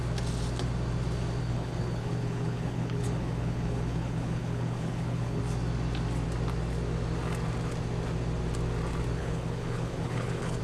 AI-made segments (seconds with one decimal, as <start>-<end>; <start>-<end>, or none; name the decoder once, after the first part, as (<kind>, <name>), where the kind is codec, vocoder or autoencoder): 1.4-5.4 (codec, HILCodec); 9.2-10.6